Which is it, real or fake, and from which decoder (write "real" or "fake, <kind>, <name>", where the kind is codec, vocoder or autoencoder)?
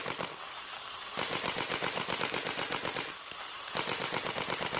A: real